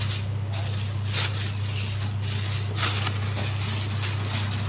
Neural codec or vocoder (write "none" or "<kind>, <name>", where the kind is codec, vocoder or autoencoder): none